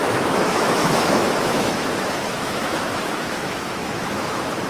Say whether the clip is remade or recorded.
remade